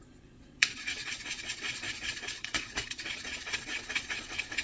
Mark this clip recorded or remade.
remade